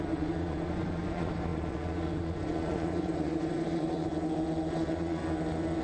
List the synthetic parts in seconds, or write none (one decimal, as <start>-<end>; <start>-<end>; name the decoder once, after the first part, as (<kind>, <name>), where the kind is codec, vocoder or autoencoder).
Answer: 0.0-4.1 (vocoder, Vocos); 4.7-5.2